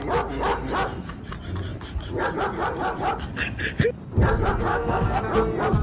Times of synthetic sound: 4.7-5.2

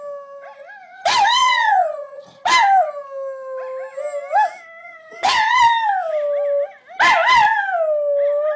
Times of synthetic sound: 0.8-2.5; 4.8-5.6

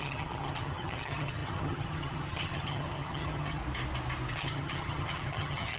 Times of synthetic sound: 0.0-3.6; 4.3-5.8

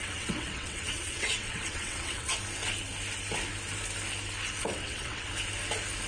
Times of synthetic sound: 0.0-2.3; 4.6-5.3

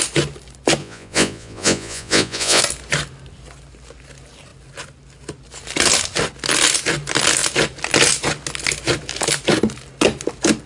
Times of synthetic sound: 0.8-2.6

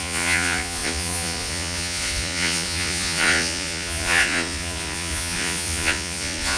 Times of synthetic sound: 0.0-6.6

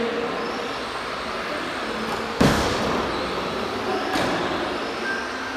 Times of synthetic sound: 2.3-2.8